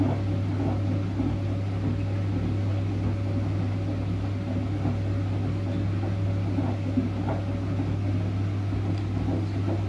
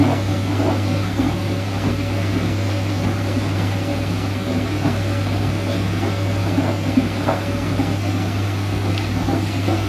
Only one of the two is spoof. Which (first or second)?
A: second